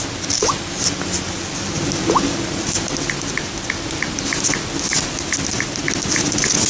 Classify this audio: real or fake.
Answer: real